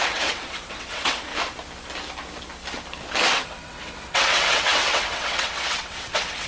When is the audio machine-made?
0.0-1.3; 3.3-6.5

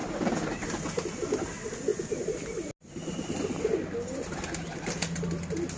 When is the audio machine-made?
none

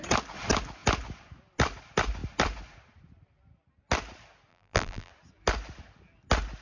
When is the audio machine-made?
4.5-5.1

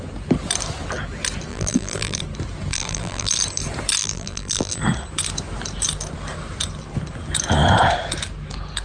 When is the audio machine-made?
1.5-2.2; 2.7-3.4; 4.0-4.8

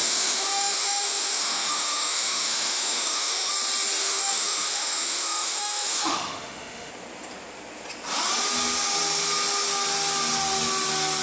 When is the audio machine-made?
0.0-3.5; 4.0-6.9

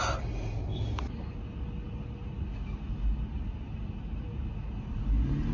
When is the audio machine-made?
none

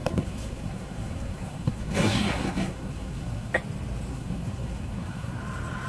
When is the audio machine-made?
0.0-3.5; 4.1-5.4